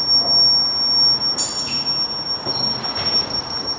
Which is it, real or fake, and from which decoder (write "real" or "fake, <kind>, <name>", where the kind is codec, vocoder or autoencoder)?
real